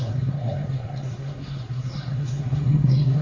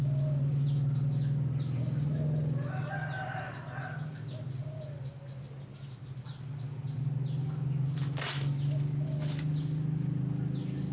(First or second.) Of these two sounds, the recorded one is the second